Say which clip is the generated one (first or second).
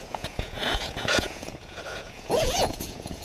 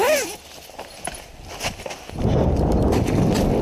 first